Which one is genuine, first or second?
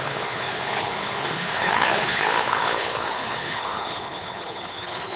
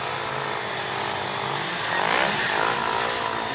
second